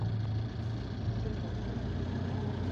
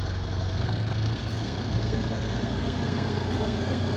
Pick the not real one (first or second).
second